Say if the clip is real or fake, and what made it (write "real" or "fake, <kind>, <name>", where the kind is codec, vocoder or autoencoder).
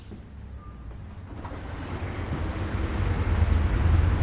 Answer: real